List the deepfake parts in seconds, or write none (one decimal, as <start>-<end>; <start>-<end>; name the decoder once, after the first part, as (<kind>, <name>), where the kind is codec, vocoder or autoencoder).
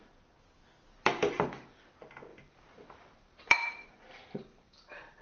0.9-1.8 (vocoder, BigVGAN v2); 2.3-5.2